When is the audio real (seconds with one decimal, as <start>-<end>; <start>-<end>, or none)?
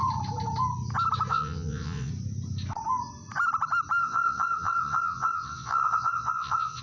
0.0-1.3; 2.1-4.0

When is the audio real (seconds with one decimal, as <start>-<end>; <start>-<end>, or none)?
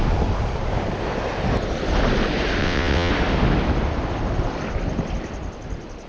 0.0-2.6; 3.1-6.1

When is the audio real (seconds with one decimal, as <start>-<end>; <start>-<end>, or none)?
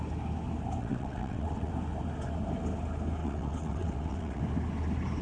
0.0-0.8; 1.7-3.2; 4.4-5.2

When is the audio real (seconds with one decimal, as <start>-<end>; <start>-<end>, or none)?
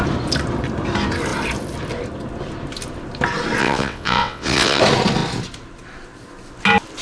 0.0-3.6; 4.8-7.0